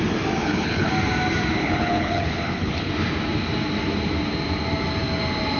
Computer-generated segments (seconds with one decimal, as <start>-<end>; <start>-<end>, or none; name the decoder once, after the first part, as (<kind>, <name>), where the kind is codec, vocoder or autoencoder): 0.4-0.9 (codec, HILCodec); 1.6-2.9